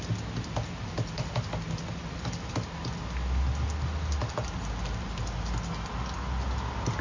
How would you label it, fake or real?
real